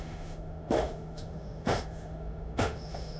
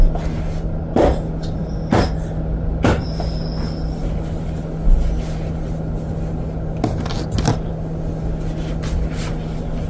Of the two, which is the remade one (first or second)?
first